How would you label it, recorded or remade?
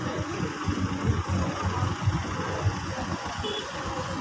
remade